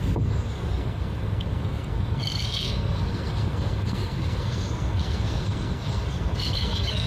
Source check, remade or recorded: remade